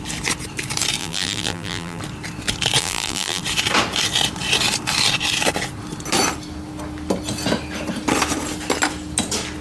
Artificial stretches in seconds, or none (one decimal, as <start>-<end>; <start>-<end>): 1.0-2.0; 2.8-3.4